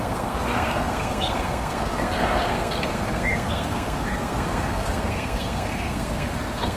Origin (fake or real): fake